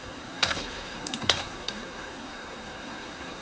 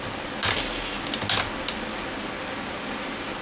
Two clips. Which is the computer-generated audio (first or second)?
first